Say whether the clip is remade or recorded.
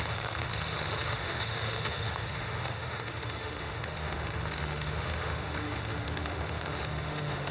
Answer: remade